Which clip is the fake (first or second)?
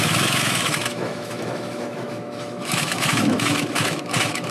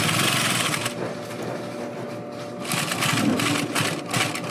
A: first